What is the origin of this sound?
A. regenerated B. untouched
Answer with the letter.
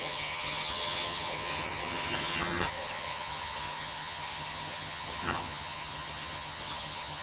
A